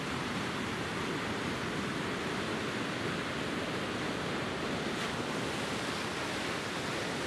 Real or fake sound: real